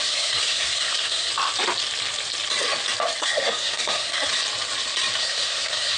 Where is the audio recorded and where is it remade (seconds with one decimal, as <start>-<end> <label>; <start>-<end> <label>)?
0.0-1.3 remade; 1.3-3.2 recorded; 3.2-4.3 remade; 4.3-5.2 recorded; 5.2-6.0 remade